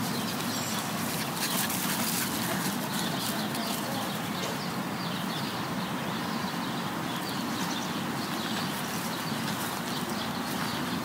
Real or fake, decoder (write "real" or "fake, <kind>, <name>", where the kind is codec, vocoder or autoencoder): real